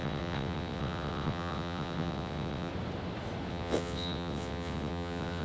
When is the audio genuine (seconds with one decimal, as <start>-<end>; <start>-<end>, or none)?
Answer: 2.7-3.5